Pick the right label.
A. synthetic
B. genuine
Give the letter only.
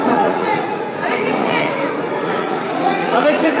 A